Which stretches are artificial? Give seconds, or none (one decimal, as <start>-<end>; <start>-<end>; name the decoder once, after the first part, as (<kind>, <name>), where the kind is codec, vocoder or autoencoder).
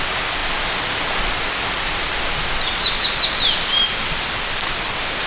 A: none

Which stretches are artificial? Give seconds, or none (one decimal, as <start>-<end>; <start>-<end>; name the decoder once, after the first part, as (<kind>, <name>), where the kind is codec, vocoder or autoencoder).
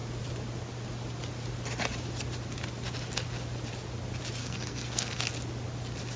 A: 4.4-5.2 (codec, SNAC)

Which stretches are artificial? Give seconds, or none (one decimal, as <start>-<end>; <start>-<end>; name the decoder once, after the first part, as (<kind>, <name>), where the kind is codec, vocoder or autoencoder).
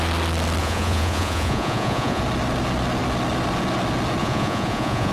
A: 0.6-2.2 (vocoder, Vocos); 4.2-5.1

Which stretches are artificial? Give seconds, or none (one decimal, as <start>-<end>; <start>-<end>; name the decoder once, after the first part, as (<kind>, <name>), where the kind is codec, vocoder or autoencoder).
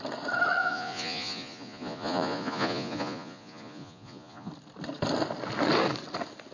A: 0.6-4.5 (vocoder, Vocos)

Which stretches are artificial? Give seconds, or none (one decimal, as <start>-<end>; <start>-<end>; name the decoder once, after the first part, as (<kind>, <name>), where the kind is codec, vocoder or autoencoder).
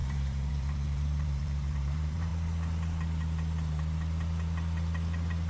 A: 0.0-2.3 (vocoder, BigVGAN v2)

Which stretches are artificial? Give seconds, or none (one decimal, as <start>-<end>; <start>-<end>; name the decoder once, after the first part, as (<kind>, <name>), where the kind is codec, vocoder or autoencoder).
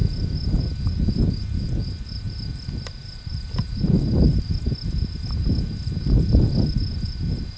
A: none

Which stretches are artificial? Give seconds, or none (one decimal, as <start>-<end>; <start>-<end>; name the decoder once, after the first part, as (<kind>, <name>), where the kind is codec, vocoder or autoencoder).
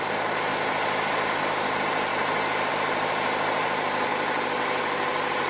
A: 2.1-2.7 (vocoder, BigVGAN v2); 4.1-5.5